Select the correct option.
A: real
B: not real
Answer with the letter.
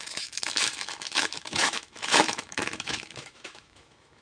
B